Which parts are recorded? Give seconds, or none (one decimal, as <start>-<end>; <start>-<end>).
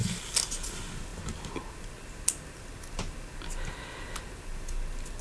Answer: 0.0-5.2